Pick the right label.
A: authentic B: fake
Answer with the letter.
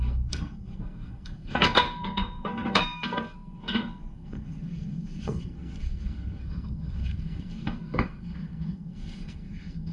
B